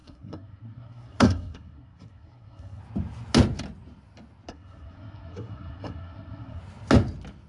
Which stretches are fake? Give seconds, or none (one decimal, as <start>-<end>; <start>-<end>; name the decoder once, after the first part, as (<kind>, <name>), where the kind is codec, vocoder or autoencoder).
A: 0.0-2.8 (codec, SNAC); 4.5-6.6